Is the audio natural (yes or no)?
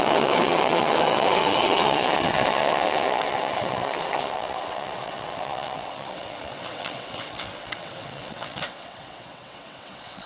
no